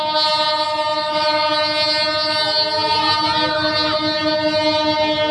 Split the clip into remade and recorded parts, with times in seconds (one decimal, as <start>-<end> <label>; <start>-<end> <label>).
0.0-5.3 recorded